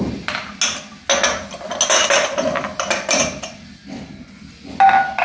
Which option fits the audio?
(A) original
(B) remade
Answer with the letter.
A